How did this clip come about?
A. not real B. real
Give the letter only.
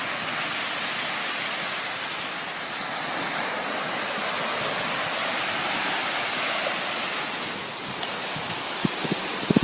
B